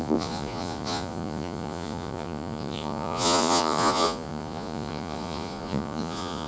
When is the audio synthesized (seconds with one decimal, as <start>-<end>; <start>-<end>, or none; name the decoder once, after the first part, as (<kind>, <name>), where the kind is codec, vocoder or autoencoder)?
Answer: 0.0-6.5 (vocoder, Vocos)